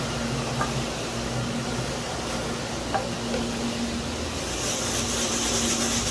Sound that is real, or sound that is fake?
real